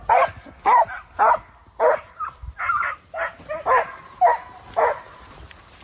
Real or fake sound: real